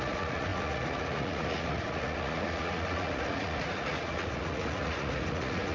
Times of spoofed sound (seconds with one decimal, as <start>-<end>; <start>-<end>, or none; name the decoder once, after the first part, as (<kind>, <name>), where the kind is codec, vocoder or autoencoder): 0.0-5.7 (vocoder, Vocos)